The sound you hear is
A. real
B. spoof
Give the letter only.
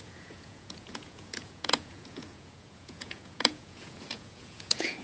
B